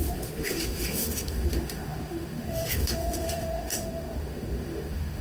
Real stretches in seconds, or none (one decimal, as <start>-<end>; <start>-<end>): none